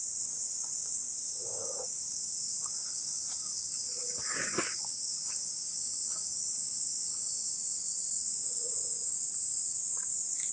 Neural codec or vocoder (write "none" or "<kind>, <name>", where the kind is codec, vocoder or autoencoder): codec, DAC